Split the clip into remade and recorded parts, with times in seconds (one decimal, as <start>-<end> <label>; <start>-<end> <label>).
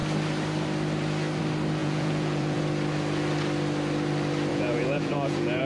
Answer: 0.0-1.8 recorded; 1.8-2.6 remade; 2.6-4.5 recorded; 4.5-5.6 remade